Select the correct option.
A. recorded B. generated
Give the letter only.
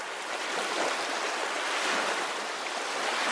A